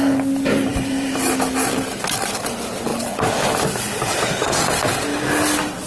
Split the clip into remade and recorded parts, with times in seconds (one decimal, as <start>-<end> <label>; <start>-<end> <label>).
0.0-0.7 recorded; 0.7-1.2 remade; 1.2-5.9 recorded